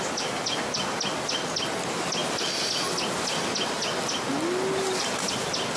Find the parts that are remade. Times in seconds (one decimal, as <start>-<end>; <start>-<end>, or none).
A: none